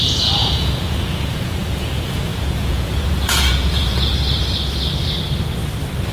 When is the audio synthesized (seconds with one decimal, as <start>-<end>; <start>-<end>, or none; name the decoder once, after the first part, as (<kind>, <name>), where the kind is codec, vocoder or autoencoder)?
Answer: 0.0-4.1 (vocoder, Vocos)